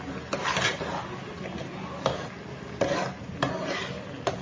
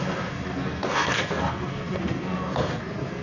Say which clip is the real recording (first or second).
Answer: first